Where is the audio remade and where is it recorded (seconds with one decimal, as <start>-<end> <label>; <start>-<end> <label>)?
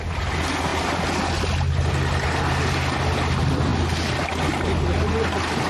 0.0-5.7 recorded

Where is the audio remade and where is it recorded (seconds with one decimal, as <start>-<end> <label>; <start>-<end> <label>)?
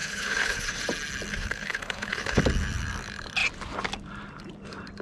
0.0-0.8 remade; 0.8-1.3 recorded; 1.3-2.4 remade; 2.4-5.0 recorded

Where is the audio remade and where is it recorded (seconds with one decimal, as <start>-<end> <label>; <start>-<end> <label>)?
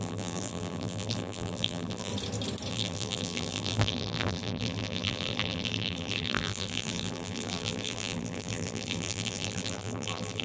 0.0-2.1 remade; 2.1-2.7 recorded; 2.7-10.4 remade